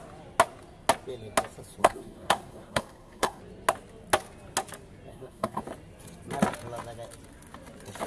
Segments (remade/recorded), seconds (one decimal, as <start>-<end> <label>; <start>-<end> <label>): 0.0-1.8 recorded; 1.8-3.4 remade; 3.4-5.1 recorded; 5.1-5.6 remade; 5.6-8.1 recorded